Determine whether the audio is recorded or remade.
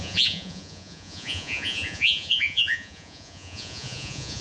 remade